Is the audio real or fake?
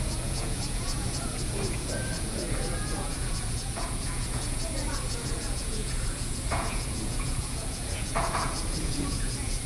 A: fake